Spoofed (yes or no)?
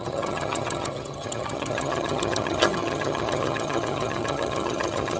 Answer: yes